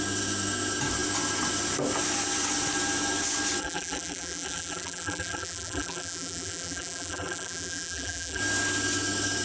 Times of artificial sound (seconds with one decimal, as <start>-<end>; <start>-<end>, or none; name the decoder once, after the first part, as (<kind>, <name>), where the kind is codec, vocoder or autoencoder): 3.6-8.4 (vocoder, BigVGAN v2)